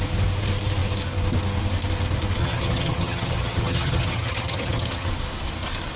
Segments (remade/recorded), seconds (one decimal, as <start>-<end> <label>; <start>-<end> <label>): 0.0-2.4 recorded; 2.4-5.1 remade; 5.1-6.0 recorded

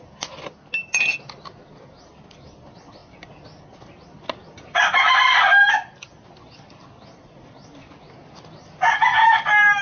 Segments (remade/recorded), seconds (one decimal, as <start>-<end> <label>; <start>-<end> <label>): 0.0-9.8 recorded

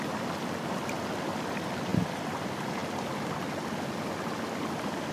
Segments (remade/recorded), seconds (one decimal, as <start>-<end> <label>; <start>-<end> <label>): 0.0-5.1 recorded

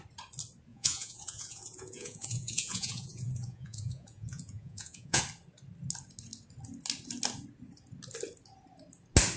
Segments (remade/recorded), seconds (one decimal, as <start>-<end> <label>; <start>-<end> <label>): 0.0-0.7 recorded; 0.7-5.2 remade; 5.2-9.4 recorded